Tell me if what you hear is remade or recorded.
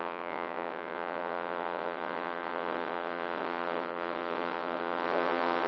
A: remade